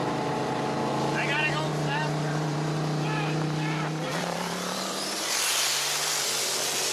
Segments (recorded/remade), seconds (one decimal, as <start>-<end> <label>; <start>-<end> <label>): 0.0-0.9 remade; 0.9-1.7 recorded; 1.7-5.4 remade; 5.4-6.9 recorded